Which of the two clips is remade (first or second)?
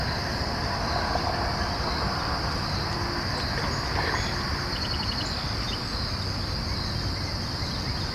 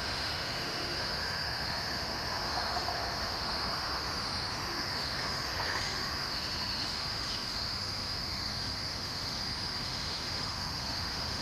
second